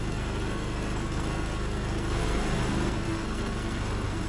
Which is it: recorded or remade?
remade